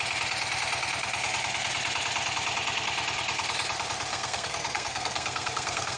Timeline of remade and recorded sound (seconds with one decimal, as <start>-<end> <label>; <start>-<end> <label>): 0.0-4.1 recorded; 4.1-6.0 remade